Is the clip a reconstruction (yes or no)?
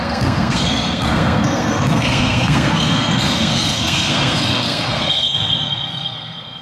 yes